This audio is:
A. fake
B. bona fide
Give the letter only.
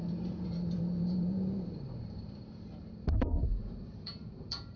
A